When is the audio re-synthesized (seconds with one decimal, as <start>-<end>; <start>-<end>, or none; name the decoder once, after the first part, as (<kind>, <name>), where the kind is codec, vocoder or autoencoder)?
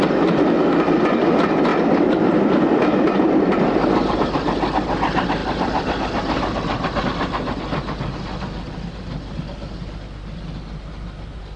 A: none